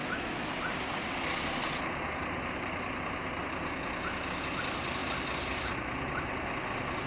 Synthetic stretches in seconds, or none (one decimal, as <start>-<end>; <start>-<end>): 2.2-3.4